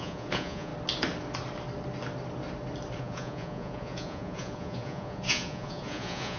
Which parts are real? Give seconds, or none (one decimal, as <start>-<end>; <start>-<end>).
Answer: 0.7-3.0